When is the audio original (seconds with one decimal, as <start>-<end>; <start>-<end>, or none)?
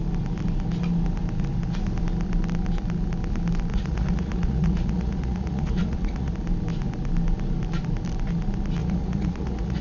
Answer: 0.0-3.7; 6.3-8.8